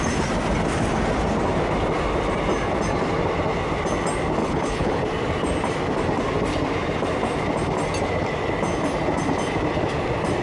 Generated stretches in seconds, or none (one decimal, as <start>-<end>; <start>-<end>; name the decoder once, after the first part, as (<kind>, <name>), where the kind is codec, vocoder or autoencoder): 4.4-5.0 (codec, HILCodec)